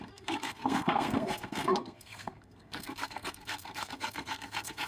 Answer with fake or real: fake